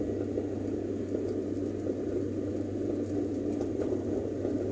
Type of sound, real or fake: real